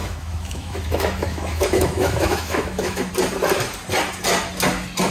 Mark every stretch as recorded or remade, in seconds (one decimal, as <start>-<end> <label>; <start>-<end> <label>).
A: 0.0-3.1 remade; 3.1-5.1 recorded